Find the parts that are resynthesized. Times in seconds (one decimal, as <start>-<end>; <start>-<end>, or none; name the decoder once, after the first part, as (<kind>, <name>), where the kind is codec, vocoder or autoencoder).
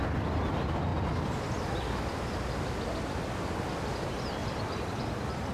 4.4-5.5 (vocoder, BigVGAN v2)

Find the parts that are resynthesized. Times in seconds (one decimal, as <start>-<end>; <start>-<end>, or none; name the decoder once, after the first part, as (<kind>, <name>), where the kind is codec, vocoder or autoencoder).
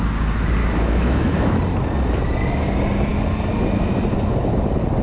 0.6-1.6 (autoencoder, DAC-VAE)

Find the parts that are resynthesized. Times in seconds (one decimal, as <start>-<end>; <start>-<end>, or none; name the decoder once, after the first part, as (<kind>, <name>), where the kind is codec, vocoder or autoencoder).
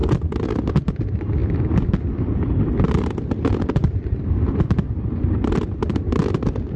none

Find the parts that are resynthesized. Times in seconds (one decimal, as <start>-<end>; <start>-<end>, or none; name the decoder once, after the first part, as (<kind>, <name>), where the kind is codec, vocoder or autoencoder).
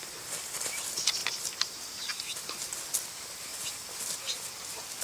none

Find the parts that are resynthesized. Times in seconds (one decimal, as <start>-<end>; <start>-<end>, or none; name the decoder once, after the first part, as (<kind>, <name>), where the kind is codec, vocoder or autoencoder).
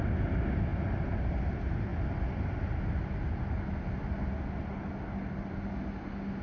none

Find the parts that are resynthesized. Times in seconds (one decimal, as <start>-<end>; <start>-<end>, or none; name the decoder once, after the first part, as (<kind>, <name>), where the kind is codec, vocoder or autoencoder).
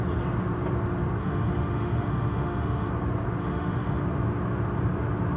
1.2-2.9 (autoencoder, DAC-VAE); 3.4-4.0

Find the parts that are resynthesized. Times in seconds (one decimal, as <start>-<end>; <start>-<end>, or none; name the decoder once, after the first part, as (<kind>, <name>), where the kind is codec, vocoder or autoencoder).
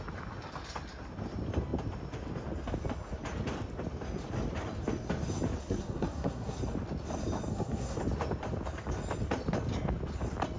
5.6-6.6 (codec, SNAC); 7.5-8.0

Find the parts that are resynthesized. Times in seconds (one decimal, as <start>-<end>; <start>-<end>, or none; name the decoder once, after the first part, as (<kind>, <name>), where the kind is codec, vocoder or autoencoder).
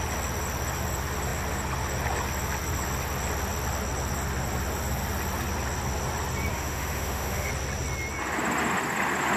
6.5-7.5 (autoencoder, DAC-VAE)